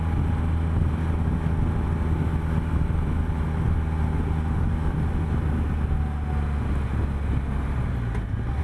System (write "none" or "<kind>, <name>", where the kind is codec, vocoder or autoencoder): none